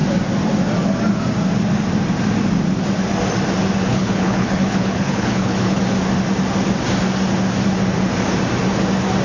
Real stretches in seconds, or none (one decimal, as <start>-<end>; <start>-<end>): 0.0-3.9; 5.8-9.2